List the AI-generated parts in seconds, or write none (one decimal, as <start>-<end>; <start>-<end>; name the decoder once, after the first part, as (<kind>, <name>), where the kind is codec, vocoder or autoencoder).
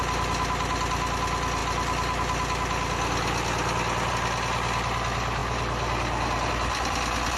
none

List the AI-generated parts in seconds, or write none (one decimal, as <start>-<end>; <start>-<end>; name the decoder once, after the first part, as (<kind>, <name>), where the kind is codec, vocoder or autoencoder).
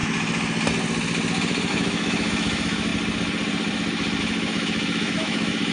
1.7-2.9 (autoencoder, DAC-VAE); 4.2-5.7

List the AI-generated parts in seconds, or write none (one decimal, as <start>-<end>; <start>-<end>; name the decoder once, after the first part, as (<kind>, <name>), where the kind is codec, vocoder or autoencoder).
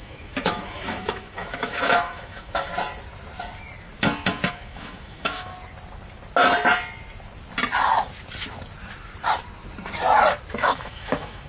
0.0-2.7 (autoencoder, DAC-VAE); 4.5-5.5; 10.5-11.5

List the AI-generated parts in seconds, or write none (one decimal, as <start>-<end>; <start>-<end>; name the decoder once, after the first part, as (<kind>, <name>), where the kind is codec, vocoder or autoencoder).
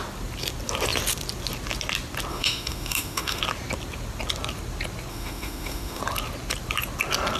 2.3-3.4 (autoencoder, DAC-VAE); 5.1-6.0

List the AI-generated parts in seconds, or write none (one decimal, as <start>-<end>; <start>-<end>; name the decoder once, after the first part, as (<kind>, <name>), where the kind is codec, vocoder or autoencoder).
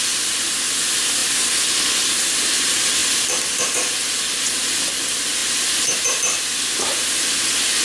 none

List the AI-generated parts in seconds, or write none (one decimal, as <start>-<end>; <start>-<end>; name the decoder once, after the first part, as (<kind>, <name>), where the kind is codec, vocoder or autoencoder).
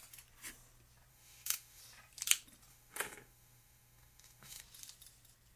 1.1-1.8 (autoencoder, DAC-VAE); 2.7-4.6